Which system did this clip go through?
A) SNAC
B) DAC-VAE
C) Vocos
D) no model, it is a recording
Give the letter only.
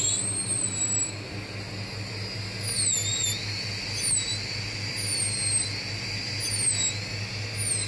D